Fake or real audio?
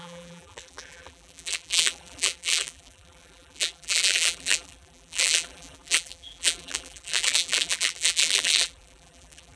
fake